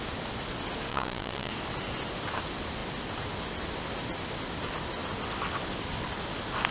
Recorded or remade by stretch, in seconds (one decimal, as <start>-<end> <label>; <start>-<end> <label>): 0.0-0.9 recorded; 0.9-1.5 remade; 1.5-6.7 recorded